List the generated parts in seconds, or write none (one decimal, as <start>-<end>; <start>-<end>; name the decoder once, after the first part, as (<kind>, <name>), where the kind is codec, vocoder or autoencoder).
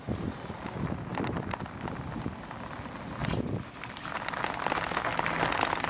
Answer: 1.1-2.2 (vocoder, BigVGAN v2); 3.2-4.1